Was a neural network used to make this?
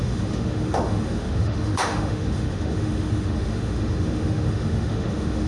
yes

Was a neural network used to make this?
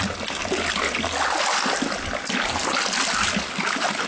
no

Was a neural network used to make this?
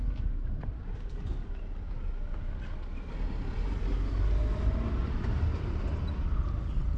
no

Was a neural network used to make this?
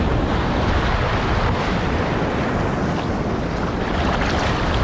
no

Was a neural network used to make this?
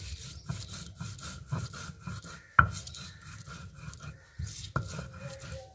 no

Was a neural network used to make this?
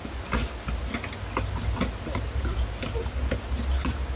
no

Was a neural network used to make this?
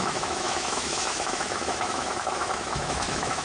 yes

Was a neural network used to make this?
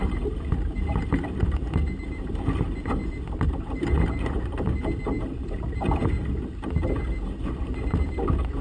no